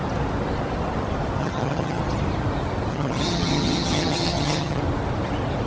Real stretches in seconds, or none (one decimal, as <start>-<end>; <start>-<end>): 0.0-1.4; 2.0-2.9; 4.8-5.7